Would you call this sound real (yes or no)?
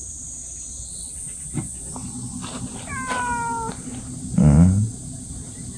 yes